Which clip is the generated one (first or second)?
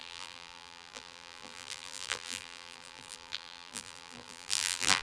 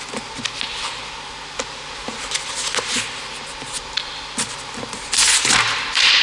first